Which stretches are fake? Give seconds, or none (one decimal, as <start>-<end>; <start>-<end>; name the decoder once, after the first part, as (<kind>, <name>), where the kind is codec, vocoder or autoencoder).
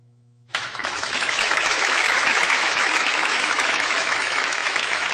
0.0-5.1 (autoencoder, DAC-VAE)